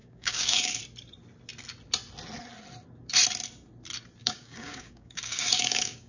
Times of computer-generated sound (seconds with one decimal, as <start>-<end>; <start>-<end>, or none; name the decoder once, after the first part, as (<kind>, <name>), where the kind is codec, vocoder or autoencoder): 0.0-0.8 (codec, DAC); 4.2-6.1